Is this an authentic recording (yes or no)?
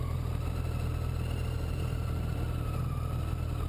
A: yes